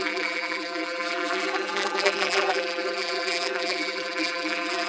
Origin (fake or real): fake